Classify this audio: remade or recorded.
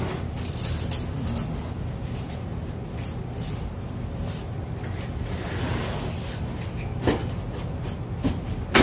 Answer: recorded